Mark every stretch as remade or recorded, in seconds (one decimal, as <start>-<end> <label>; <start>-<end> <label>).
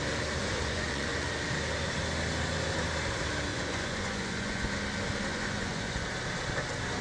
0.0-0.4 recorded; 0.4-1.3 remade; 1.3-3.5 recorded; 3.5-4.7 remade; 4.7-5.3 recorded; 5.3-6.1 remade; 6.1-7.0 recorded